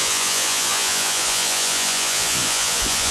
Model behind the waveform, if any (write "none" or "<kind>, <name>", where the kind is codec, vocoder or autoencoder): vocoder, Vocos